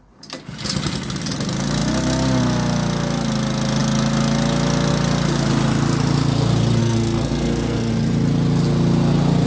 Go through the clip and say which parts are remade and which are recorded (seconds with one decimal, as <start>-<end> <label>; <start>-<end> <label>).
0.0-6.8 recorded; 6.8-7.9 remade; 7.9-9.5 recorded